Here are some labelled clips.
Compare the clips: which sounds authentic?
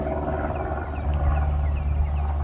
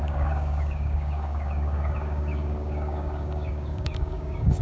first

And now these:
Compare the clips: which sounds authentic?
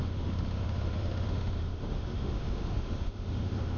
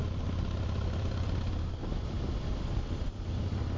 second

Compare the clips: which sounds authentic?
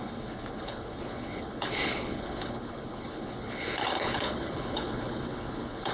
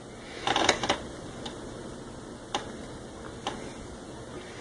second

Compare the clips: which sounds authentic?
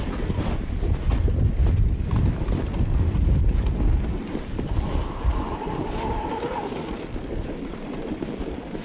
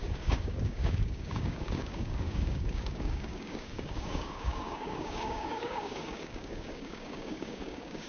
first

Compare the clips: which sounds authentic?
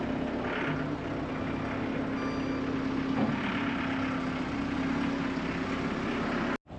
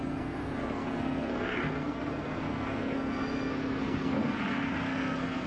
first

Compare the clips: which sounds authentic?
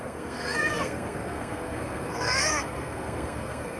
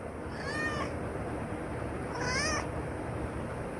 second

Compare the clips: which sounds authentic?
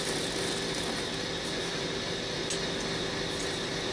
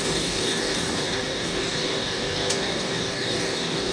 first